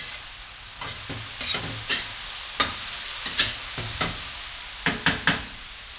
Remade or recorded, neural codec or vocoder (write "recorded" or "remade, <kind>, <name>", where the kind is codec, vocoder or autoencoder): recorded